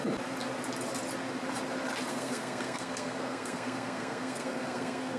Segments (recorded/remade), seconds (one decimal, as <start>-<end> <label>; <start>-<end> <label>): 0.0-2.1 recorded; 2.1-5.2 remade

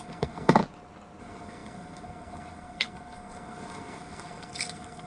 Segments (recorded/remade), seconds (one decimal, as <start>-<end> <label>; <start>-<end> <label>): 0.0-0.6 remade; 0.6-1.2 recorded; 1.2-5.1 remade

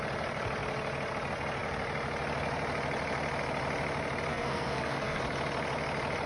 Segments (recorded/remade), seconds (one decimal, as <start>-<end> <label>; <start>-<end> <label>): 0.0-4.3 recorded; 4.3-5.2 remade; 5.2-6.3 recorded

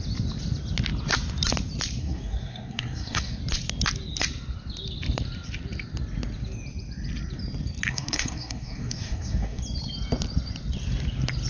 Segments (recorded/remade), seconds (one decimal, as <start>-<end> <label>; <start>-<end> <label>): 0.0-2.0 recorded; 2.0-3.4 remade; 3.4-7.9 recorded; 7.9-9.6 remade; 9.6-11.5 recorded

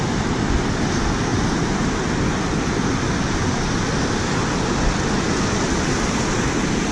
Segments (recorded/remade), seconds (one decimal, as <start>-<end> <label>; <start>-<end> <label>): 0.0-6.9 recorded

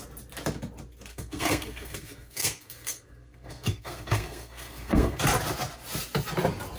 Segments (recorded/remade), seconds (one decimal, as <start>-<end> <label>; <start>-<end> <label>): 0.0-1.1 recorded; 1.1-5.2 remade; 5.2-6.8 recorded

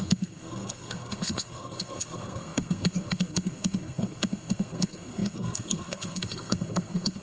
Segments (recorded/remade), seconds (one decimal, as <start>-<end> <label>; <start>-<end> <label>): 0.0-7.2 remade

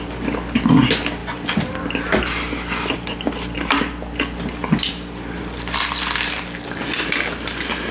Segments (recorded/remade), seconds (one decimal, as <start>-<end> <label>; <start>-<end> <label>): 0.0-7.9 recorded